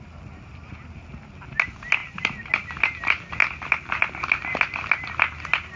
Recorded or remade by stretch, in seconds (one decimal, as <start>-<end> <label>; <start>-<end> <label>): 0.0-5.8 recorded